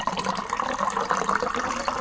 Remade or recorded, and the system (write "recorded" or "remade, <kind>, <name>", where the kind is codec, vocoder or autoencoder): recorded